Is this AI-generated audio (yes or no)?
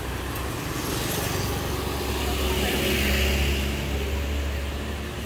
no